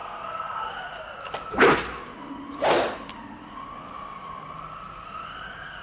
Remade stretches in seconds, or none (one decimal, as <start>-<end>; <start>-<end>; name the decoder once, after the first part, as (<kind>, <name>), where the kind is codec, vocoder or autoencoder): 0.0-0.7 (codec, SNAC)